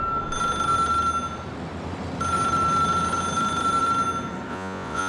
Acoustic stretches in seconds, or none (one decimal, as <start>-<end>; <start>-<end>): 0.0-4.5